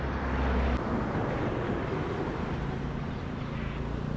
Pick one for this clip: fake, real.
real